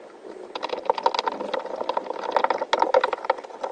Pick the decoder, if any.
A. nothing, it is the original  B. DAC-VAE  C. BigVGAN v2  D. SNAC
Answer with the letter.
A